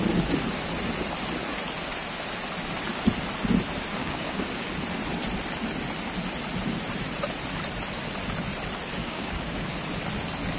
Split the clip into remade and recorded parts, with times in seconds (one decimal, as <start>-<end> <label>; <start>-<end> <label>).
0.0-4.0 recorded; 4.0-4.7 remade; 4.7-9.0 recorded; 9.0-9.7 remade; 9.7-10.6 recorded